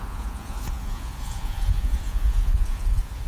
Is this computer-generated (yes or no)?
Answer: yes